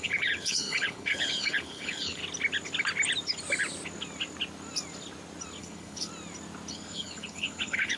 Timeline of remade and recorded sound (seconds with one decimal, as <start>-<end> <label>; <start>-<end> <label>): 0.0-2.2 remade; 2.2-5.6 recorded; 5.6-6.1 remade; 6.1-6.7 recorded; 6.7-8.0 remade